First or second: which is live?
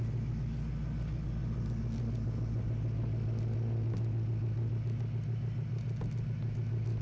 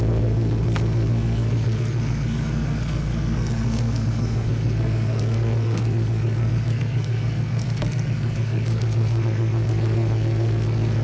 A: first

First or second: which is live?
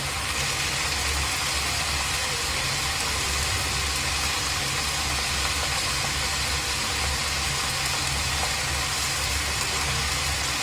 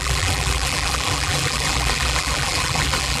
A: first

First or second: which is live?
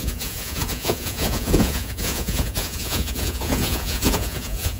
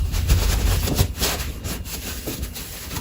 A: second